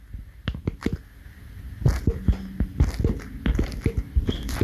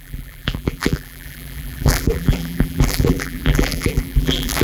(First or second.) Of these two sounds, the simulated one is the second